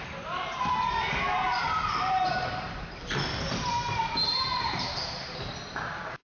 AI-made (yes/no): yes